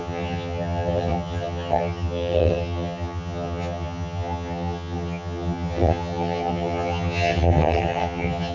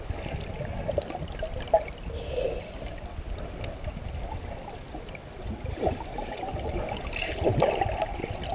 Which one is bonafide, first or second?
second